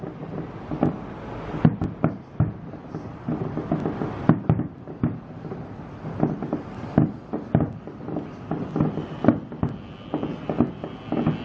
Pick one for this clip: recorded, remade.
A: recorded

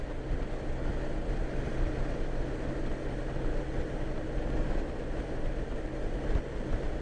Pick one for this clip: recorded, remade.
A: recorded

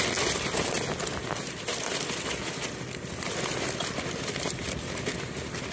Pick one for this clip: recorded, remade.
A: recorded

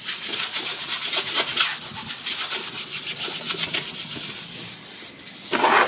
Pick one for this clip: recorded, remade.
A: recorded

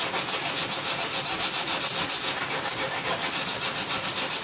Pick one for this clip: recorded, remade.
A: recorded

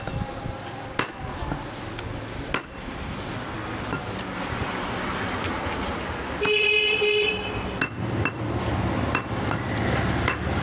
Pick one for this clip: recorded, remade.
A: recorded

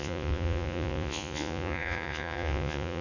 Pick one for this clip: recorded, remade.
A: remade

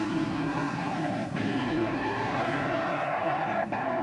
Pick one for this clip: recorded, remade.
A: remade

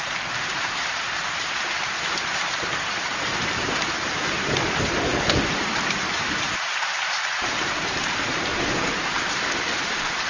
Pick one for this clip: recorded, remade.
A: remade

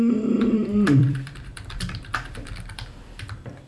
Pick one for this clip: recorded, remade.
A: remade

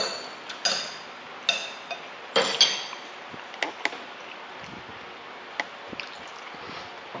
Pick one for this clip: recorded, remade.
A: recorded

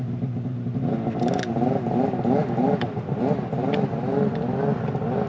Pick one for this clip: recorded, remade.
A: recorded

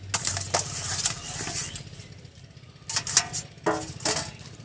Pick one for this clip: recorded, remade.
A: recorded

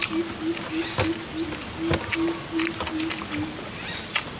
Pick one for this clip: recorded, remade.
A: recorded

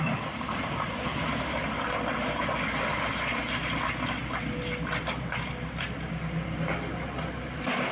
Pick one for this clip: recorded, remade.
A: recorded